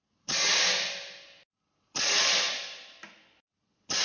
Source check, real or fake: real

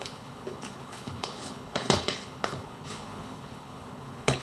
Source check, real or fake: fake